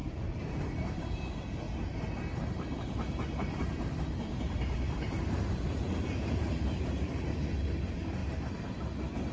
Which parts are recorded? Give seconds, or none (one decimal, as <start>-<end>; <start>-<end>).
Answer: 1.3-2.3; 7.2-8.2; 8.8-9.3